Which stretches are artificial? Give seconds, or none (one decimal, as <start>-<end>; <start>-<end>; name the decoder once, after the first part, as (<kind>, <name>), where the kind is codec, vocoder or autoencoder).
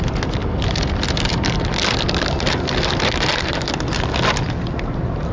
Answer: none